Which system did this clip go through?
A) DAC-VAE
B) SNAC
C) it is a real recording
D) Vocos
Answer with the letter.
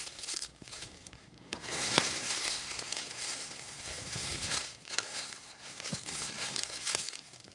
B